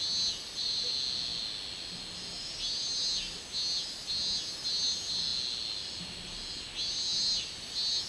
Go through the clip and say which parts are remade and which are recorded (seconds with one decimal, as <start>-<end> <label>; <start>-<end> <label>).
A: 0.0-8.1 recorded